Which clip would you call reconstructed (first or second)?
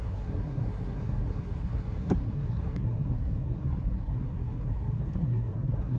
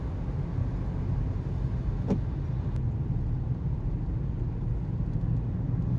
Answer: first